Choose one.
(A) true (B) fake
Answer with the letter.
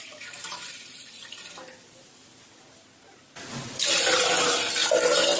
A